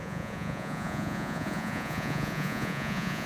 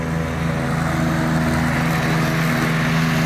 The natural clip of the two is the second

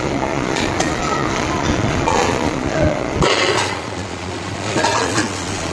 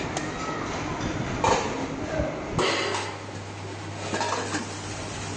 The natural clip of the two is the second